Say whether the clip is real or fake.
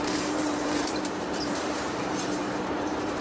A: fake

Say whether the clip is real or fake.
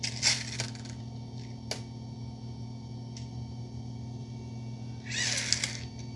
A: real